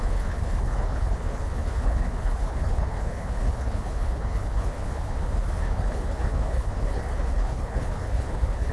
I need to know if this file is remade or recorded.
remade